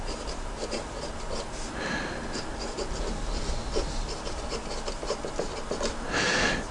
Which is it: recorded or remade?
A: recorded